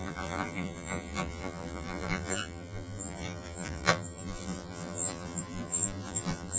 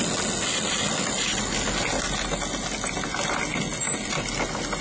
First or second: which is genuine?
second